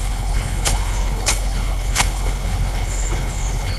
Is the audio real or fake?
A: fake